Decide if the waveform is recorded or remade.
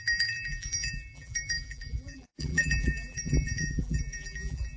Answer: remade